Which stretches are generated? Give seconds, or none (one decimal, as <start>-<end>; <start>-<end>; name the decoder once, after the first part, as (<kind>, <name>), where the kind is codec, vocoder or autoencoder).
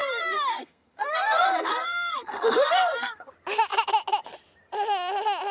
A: 0.0-3.3 (codec, SNAC)